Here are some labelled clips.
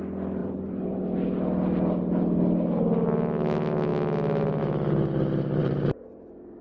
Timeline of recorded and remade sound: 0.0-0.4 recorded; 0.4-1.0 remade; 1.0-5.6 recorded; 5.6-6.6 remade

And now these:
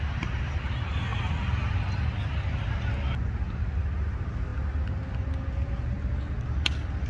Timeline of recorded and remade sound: 0.0-7.1 recorded

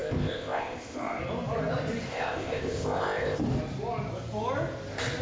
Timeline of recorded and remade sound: 0.0-1.2 remade; 1.2-2.1 recorded; 2.1-3.4 remade; 3.4-5.2 recorded

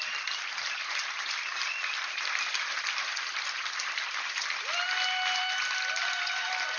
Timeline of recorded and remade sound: 0.0-6.8 recorded

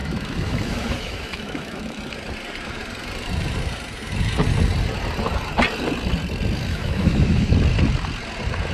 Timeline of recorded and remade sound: 0.0-2.0 remade; 2.0-6.7 recorded; 6.7-7.5 remade; 7.5-8.7 recorded

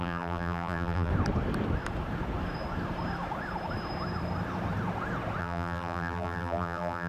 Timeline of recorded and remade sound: 0.0-1.1 remade; 1.1-5.4 recorded; 5.4-7.1 remade